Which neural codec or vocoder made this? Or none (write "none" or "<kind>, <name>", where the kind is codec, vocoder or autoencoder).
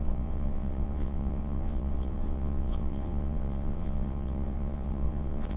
vocoder, WaveNeXt